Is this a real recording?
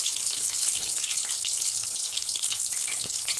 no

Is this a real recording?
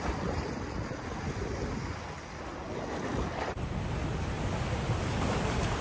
yes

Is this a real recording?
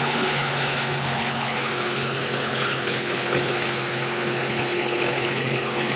no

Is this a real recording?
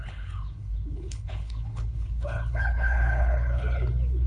no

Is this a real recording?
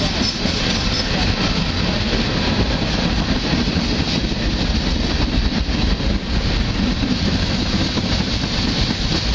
yes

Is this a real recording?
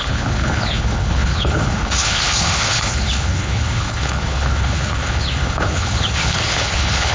no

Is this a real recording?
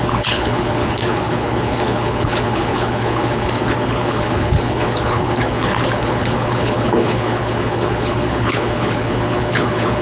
no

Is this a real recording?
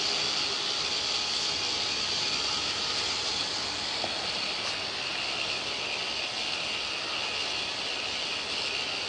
yes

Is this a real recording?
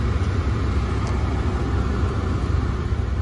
yes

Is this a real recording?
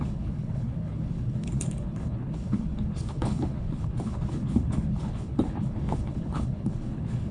no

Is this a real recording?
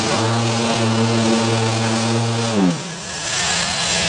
yes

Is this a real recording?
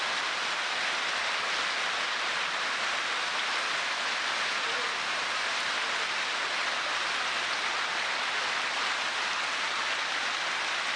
yes